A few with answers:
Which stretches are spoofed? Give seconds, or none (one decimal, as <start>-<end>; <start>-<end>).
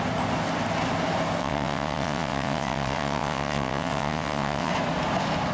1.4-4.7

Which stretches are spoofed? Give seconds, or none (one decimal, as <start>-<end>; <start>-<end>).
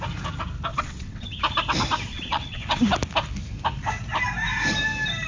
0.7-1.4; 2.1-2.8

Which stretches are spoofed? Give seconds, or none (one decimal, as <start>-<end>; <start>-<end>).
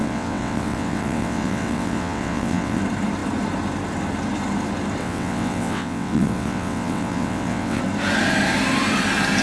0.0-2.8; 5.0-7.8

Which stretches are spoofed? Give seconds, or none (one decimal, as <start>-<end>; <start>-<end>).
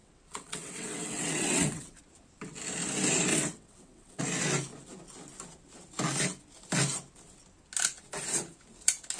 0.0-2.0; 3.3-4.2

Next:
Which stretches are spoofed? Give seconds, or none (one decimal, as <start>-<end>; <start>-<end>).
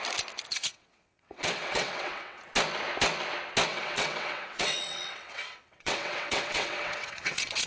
0.5-2.4; 3.7-7.7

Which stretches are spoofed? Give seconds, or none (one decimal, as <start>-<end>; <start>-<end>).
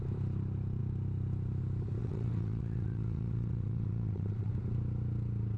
2.0-4.5